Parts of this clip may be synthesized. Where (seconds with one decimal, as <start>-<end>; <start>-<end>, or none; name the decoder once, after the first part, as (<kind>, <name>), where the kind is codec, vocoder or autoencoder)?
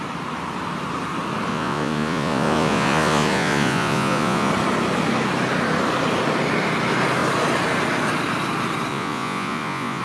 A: 1.5-4.5 (vocoder, Vocos); 8.9-10.0